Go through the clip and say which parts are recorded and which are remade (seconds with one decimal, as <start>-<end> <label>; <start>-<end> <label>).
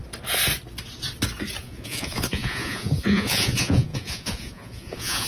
0.0-1.6 recorded; 1.6-5.3 remade